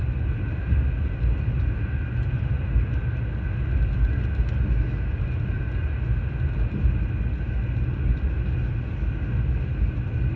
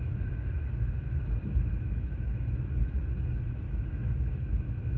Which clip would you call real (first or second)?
first